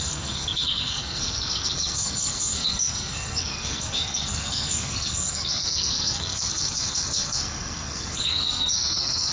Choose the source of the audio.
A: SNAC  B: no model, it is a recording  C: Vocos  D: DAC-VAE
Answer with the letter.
A